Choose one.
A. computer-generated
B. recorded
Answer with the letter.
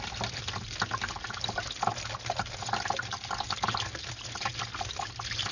B